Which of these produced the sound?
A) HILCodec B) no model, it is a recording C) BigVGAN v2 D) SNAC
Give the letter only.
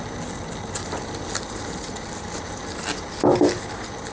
B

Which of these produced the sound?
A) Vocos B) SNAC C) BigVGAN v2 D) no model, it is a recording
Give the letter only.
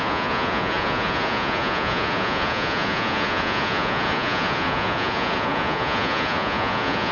A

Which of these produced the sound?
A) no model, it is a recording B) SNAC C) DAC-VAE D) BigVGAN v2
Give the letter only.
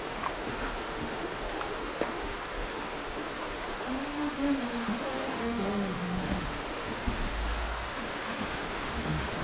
C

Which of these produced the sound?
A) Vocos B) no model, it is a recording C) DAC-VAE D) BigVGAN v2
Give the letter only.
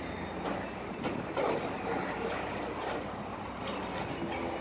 B